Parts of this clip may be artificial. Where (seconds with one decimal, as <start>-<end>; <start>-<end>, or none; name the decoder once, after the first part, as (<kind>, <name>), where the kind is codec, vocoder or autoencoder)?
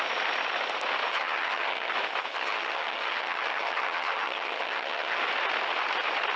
1.1-1.9 (vocoder, HiFi-GAN); 2.3-5.2